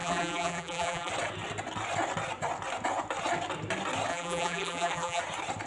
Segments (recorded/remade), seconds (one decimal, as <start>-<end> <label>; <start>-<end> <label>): 0.0-1.1 remade; 1.1-4.1 recorded; 4.1-5.2 remade; 5.2-5.7 recorded